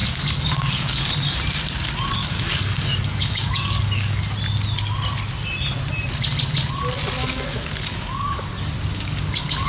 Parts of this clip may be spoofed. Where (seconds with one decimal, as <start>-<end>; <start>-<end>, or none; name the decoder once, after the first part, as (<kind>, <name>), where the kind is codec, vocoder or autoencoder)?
0.0-1.1 (codec, DAC); 2.2-4.2; 7.2-8.5; 8.9-9.7